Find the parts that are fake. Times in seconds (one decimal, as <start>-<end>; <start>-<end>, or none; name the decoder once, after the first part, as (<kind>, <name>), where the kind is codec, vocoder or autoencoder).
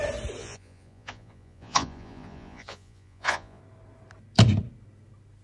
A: 0.4-3.6 (vocoder, Vocos)